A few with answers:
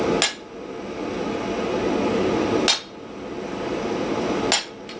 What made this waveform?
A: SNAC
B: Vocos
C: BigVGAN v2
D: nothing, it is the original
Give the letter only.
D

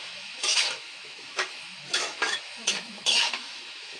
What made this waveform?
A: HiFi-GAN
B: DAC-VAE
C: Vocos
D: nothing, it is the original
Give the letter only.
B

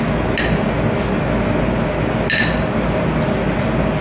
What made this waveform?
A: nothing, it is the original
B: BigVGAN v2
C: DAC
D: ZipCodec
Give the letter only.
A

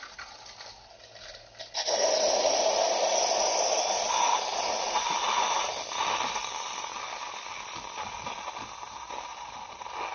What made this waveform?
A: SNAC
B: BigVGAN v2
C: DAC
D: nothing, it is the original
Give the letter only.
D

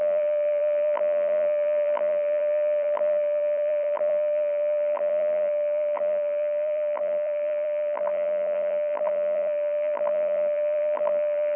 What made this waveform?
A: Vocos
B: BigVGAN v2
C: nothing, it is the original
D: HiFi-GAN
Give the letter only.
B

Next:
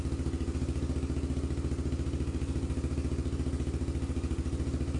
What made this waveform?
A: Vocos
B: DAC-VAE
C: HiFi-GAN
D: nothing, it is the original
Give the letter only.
D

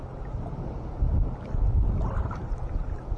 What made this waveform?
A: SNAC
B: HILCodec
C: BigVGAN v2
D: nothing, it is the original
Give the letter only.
D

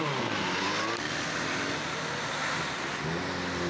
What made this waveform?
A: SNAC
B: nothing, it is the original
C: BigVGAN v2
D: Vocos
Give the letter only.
B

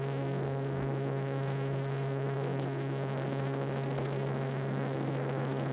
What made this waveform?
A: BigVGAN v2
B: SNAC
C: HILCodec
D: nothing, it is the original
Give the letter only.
B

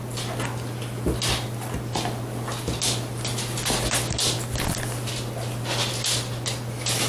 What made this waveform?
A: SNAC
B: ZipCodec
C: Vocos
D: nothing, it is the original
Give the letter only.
D